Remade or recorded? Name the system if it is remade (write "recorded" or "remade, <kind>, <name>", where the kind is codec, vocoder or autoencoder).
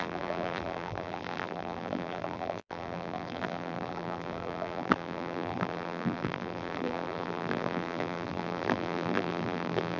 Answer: remade, vocoder, BigVGAN v2